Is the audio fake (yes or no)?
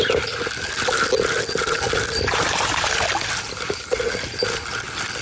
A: no